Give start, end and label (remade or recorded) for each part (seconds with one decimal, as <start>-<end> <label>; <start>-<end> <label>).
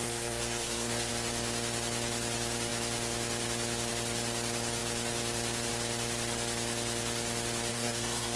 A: 0.0-1.1 remade; 1.1-7.7 recorded; 7.7-8.4 remade